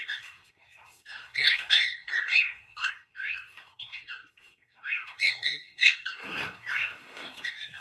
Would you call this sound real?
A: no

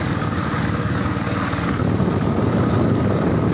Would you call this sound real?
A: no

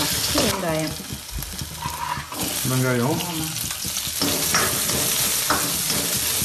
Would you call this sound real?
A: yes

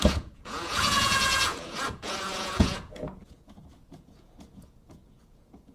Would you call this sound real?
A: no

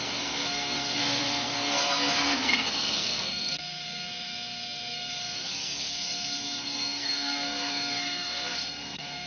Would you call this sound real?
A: no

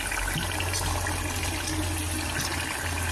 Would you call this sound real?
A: yes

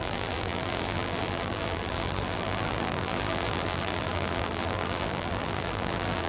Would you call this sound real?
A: no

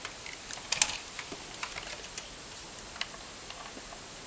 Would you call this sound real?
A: yes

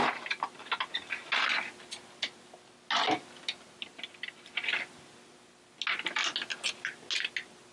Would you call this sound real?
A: yes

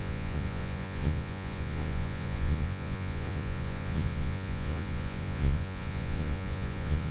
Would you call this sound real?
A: no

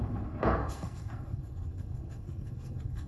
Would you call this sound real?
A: no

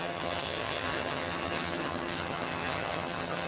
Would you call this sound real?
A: no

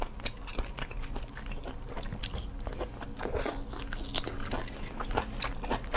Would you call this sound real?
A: yes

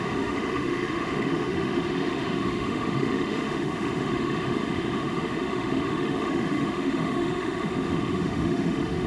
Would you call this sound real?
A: no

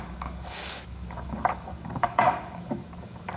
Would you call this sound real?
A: no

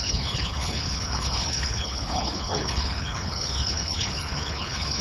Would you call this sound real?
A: no